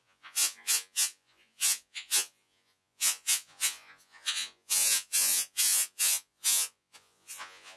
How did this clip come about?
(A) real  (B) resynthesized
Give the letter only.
B